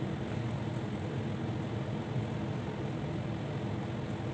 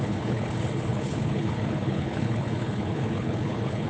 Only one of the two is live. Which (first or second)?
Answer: first